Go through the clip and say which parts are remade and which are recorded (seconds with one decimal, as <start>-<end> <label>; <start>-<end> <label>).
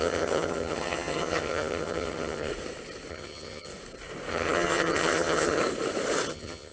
0.0-2.5 remade; 2.5-3.1 recorded; 3.1-3.7 remade; 3.7-4.3 recorded; 4.3-5.6 remade; 5.6-6.3 recorded; 6.3-6.7 remade